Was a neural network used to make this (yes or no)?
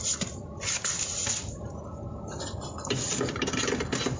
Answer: yes